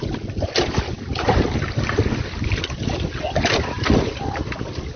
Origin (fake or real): real